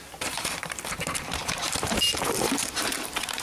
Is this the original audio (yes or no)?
no